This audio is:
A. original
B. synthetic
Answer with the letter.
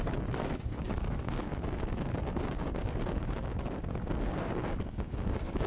B